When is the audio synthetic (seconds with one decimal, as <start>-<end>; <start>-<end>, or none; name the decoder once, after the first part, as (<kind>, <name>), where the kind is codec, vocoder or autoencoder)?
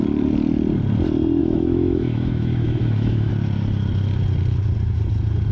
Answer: 1.4-3.3 (autoencoder, DAC-VAE)